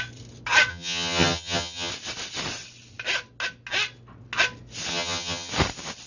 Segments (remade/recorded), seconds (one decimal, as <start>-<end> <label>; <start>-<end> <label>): 0.0-0.7 recorded; 0.7-1.9 remade; 1.9-4.9 recorded; 4.9-5.5 remade; 5.5-6.1 recorded